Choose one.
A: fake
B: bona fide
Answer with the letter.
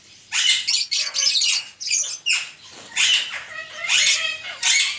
B